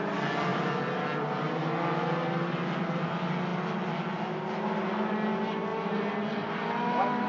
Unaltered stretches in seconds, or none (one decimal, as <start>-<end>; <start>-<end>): 0.0-7.3